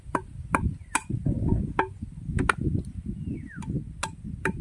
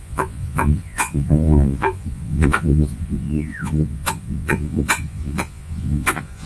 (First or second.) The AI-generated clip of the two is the second